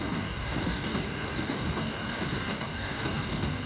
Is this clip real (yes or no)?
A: no